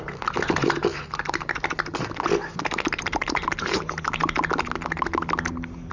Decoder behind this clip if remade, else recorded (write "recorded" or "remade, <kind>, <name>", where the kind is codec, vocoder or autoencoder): recorded